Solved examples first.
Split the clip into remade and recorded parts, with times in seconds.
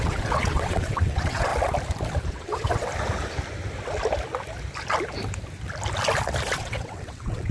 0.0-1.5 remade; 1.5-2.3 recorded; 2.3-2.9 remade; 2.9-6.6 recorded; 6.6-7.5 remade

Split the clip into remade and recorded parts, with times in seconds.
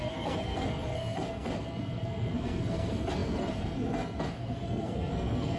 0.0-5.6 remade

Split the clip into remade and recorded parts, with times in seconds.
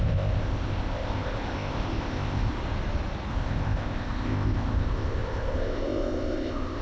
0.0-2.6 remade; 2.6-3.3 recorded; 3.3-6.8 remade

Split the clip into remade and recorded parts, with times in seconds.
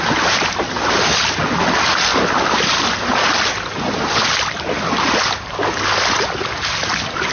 0.0-7.3 recorded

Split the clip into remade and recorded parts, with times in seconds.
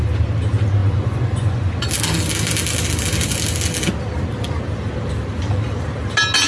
0.0-0.8 recorded; 0.8-1.9 remade; 1.9-6.5 recorded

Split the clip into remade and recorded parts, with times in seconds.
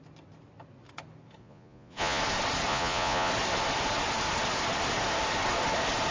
0.0-1.4 recorded; 1.4-2.2 remade; 2.2-2.7 recorded; 2.7-3.3 remade; 3.3-6.1 recorded